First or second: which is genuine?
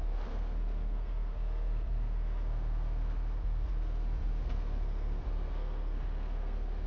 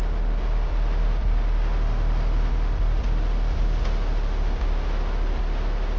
second